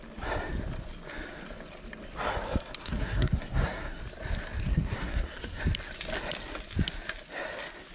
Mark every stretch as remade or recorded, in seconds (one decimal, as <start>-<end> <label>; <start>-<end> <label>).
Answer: 0.0-2.8 recorded; 2.8-4.0 remade; 4.0-4.7 recorded; 4.7-5.6 remade; 5.6-7.9 recorded